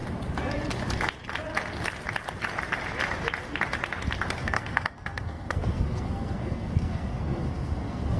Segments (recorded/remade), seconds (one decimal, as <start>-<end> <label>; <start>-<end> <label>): 0.0-4.4 recorded; 4.4-8.2 remade